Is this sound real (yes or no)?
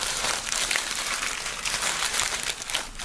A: no